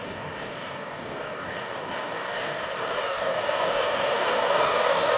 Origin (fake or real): fake